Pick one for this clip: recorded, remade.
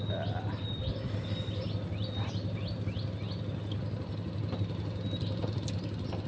recorded